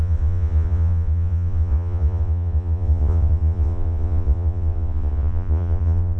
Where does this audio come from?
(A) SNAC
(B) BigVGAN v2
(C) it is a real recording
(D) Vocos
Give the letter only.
D